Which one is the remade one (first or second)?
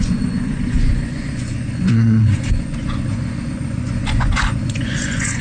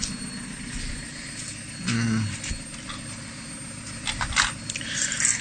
first